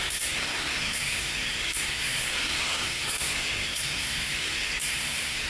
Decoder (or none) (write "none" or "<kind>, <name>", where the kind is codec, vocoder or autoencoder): codec, SNAC